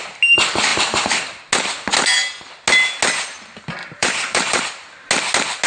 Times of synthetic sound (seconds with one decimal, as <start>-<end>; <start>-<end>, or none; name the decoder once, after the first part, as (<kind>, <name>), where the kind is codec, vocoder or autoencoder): 0.7-1.4 (vocoder, BigVGAN v2); 3.8-4.6